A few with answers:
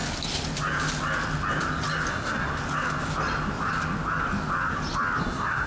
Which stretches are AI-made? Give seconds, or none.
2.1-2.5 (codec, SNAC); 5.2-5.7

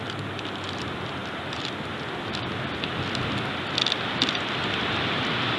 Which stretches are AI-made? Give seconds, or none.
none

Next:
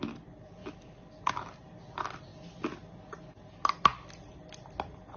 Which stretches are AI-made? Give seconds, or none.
none

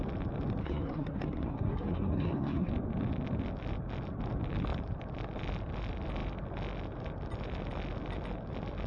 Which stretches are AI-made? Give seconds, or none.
0.6-2.7 (codec, SNAC)

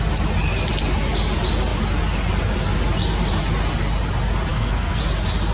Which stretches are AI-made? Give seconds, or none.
4.5-5.0 (codec, SNAC)